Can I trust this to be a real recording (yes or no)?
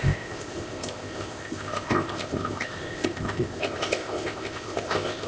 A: no